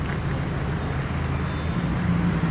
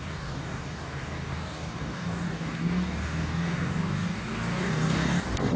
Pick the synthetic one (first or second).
second